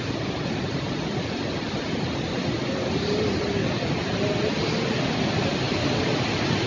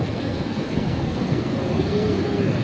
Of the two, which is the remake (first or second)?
second